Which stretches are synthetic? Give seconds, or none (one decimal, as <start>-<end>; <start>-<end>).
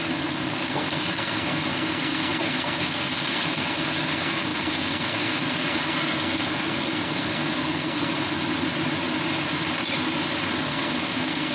0.0-8.1; 10.6-11.5